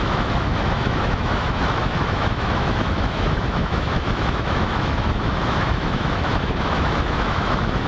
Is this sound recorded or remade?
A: remade